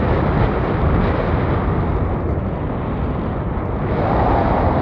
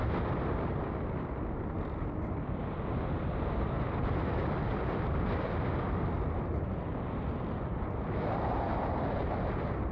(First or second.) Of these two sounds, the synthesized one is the second